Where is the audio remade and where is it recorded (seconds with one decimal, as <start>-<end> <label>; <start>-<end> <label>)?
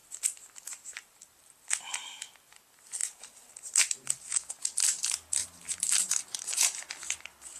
0.0-3.0 recorded; 3.0-4.5 remade; 4.5-5.4 recorded; 5.4-6.9 remade; 6.9-7.6 recorded